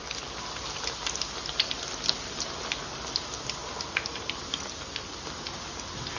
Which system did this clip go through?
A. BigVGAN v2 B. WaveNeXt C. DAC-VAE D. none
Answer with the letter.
D